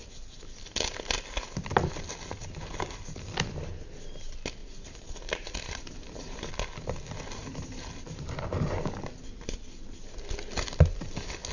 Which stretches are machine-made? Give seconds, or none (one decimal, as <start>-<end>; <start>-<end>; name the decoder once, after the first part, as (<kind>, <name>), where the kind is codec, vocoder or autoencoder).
4.6-6.5 (vocoder, BigVGAN v2); 7.4-8.4